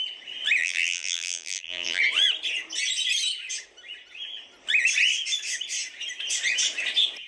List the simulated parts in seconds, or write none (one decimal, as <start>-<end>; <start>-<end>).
0.6-2.0